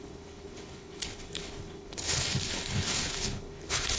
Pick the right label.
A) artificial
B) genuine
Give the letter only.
A